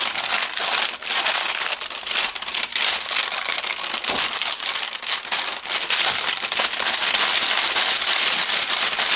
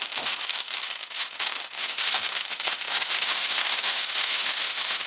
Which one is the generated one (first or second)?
second